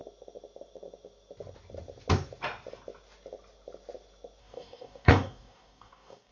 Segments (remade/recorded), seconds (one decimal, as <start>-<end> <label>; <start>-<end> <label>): 0.0-4.4 recorded; 4.4-6.3 remade